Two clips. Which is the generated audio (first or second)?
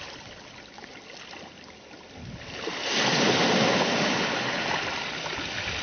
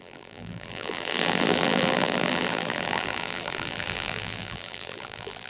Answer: second